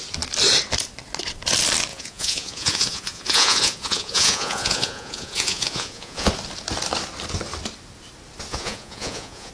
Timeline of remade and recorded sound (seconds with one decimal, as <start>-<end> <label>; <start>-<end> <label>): 0.0-1.9 recorded; 1.9-6.3 remade; 6.3-8.5 recorded; 8.5-9.5 remade